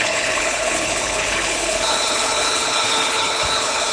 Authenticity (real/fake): fake